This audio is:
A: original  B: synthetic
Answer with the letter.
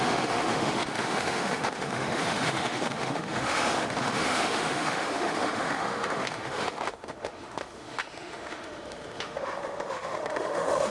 B